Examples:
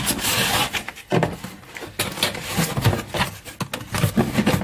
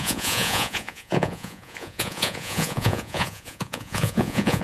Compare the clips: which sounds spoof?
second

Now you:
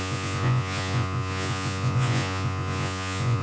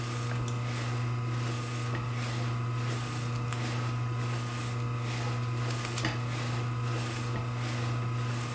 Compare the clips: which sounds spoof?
first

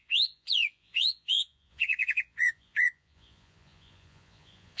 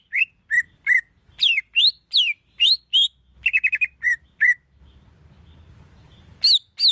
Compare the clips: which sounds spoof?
first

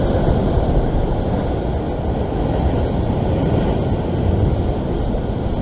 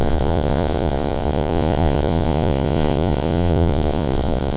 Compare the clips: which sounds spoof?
second